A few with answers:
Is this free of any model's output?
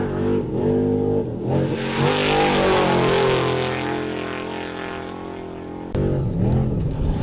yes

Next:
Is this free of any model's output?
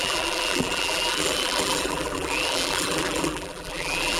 no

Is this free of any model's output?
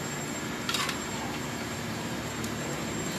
no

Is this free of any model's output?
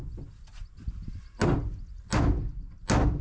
yes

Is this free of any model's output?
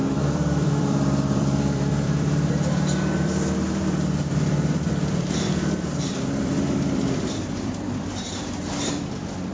no